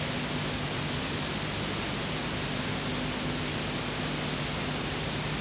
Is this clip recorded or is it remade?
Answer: recorded